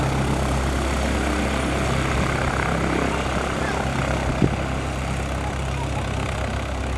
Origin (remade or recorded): recorded